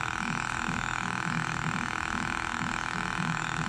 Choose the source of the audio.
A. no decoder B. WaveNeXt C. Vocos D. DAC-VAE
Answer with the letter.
D